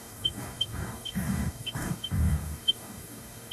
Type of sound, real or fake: fake